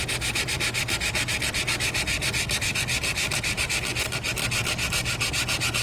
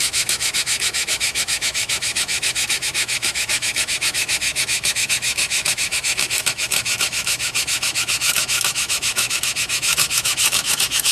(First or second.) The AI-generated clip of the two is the second